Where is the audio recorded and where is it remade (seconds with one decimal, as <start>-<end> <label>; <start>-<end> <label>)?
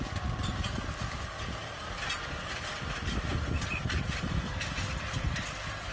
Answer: 0.0-5.9 recorded